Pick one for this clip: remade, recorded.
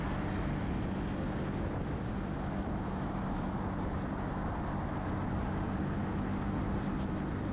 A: recorded